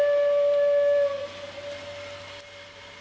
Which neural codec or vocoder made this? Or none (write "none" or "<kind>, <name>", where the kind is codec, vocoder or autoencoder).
none